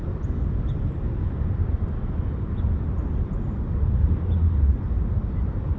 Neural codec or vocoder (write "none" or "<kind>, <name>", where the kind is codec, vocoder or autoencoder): none